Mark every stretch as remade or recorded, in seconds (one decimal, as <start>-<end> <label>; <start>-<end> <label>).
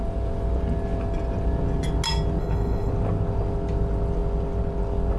0.0-2.4 recorded; 2.4-2.9 remade; 2.9-5.2 recorded